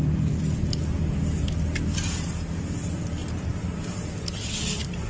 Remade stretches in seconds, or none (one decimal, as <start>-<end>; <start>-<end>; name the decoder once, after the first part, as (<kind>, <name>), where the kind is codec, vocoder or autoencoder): none